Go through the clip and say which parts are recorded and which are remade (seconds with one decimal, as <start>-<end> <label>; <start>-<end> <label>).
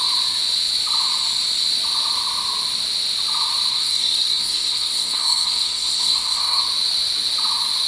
0.0-3.7 recorded; 3.7-6.6 remade; 6.6-7.9 recorded